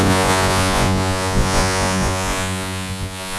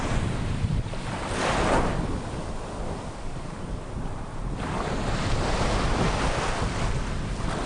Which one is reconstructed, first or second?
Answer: first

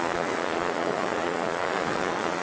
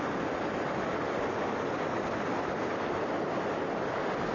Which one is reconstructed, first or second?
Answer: first